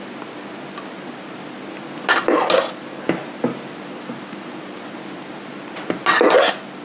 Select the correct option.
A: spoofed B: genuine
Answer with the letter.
B